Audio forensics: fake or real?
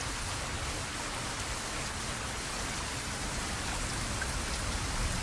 real